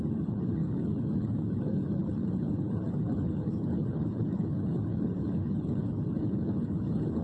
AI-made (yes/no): yes